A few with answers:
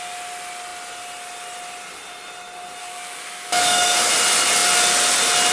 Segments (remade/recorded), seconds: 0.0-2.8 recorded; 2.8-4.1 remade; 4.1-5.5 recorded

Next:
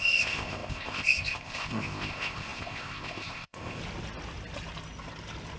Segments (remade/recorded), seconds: 0.0-3.8 remade; 3.8-5.6 recorded

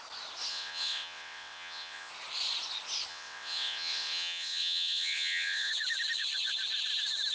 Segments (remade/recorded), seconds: 0.0-0.5 recorded; 0.5-2.1 remade; 2.1-3.1 recorded; 3.1-5.7 remade; 5.7-7.3 recorded

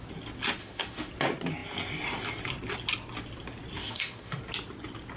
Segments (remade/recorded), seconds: 0.0-0.6 recorded; 0.6-1.1 remade; 1.1-3.8 recorded; 3.8-4.4 remade; 4.4-5.2 recorded

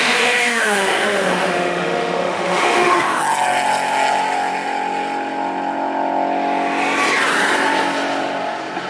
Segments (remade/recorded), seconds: 0.0-3.2 remade; 3.2-8.9 recorded

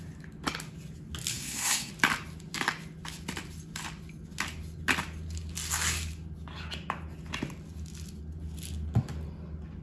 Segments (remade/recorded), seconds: 0.0-1.3 recorded; 1.3-1.9 remade; 1.9-9.8 recorded

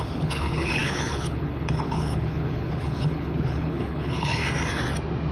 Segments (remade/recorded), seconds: 0.0-4.4 remade; 4.4-5.3 recorded

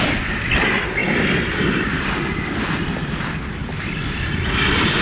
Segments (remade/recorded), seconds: 0.0-5.0 recorded